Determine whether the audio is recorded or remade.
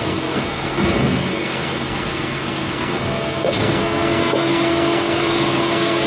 remade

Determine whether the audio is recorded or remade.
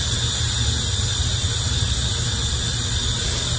recorded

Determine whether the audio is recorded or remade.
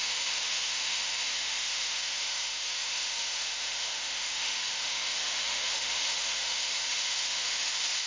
remade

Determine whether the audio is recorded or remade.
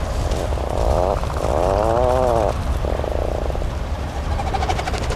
recorded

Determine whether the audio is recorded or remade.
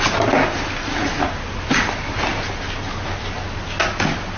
recorded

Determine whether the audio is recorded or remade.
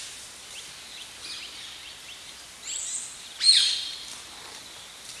recorded